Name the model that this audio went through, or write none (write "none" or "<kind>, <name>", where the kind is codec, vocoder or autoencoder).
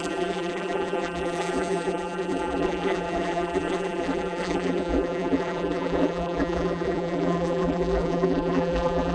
vocoder, BigVGAN v2